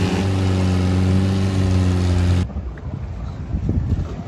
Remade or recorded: recorded